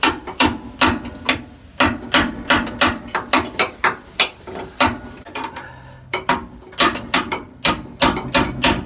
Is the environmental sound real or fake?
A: real